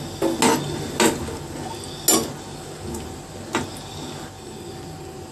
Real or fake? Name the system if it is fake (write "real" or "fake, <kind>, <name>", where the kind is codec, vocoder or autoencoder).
real